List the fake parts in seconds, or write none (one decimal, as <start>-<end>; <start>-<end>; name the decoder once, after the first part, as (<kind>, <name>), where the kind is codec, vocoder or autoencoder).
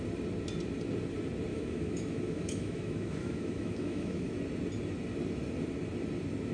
1.5-4.3 (autoencoder, DAC-VAE)